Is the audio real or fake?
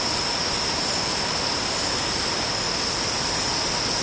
real